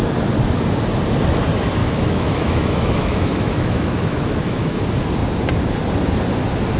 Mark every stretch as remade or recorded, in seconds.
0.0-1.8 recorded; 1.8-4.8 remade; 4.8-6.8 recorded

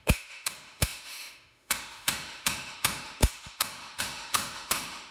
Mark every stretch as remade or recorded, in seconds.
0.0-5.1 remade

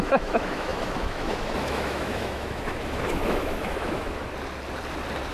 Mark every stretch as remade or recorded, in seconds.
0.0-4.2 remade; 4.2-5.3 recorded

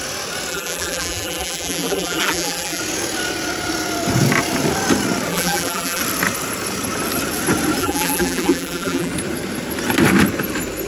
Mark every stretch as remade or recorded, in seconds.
0.0-0.5 recorded; 0.5-2.8 remade; 2.8-5.3 recorded; 5.3-6.0 remade; 6.0-7.8 recorded; 7.8-9.1 remade; 9.1-10.9 recorded

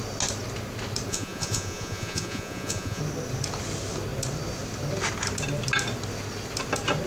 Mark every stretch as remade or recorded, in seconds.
0.0-1.1 recorded; 1.1-3.0 remade; 3.0-7.1 recorded